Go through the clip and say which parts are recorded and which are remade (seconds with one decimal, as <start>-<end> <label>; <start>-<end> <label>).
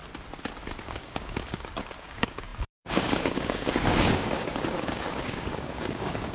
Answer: 0.0-0.8 recorded; 0.8-6.3 remade